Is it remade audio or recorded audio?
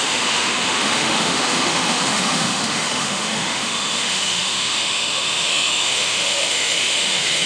remade